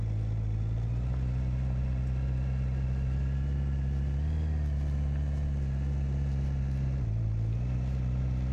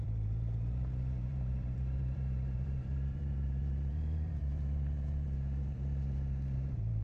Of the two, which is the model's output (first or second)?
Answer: second